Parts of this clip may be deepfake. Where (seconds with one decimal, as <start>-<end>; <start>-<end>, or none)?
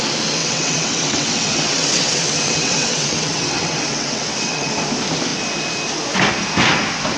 0.4-4.7